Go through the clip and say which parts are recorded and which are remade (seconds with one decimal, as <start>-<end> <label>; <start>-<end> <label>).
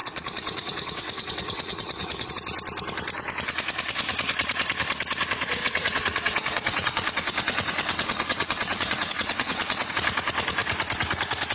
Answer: 0.0-2.3 remade; 2.3-5.6 recorded; 5.6-9.9 remade; 9.9-11.5 recorded